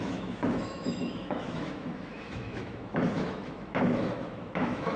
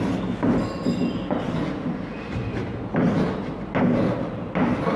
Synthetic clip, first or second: first